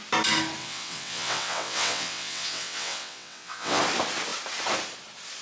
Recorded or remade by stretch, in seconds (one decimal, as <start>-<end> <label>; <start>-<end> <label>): 0.0-0.6 recorded; 0.6-3.8 remade; 3.8-5.4 recorded